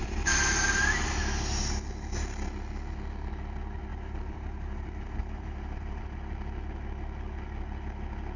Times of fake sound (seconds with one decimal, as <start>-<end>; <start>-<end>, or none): 0.0-1.2; 3.9-6.0